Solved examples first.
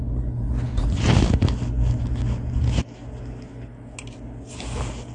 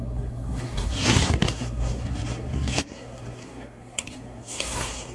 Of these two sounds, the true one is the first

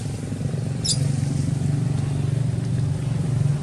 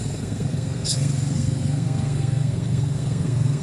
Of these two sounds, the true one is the first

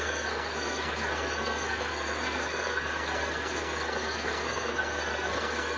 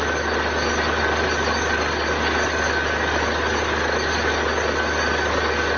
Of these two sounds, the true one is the second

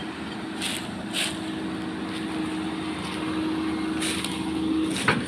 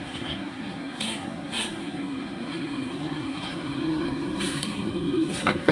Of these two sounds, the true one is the first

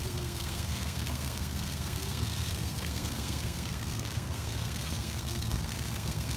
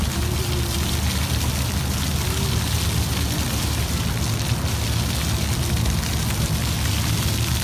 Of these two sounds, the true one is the second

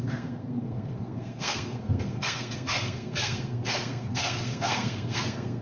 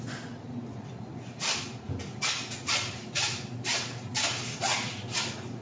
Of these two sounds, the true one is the second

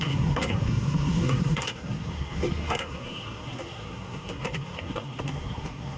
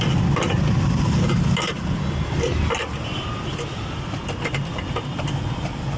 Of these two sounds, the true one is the second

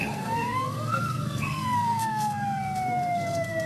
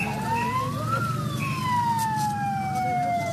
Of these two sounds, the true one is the second